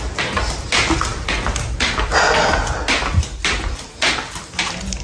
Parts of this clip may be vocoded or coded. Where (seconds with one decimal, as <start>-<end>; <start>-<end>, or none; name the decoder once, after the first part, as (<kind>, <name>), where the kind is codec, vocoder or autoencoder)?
none